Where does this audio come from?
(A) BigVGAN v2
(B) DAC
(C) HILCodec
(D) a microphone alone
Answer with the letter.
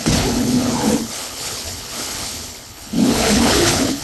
C